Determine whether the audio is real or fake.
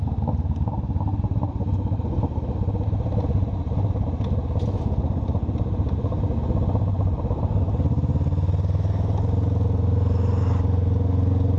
real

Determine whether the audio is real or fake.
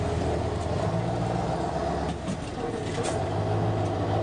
real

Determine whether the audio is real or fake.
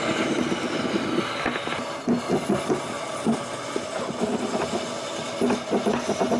real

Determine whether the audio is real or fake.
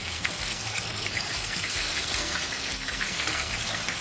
fake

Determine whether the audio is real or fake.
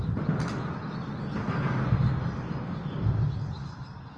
real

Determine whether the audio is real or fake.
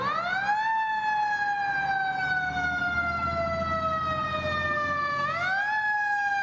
real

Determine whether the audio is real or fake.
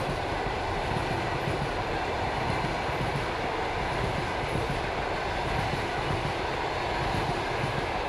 real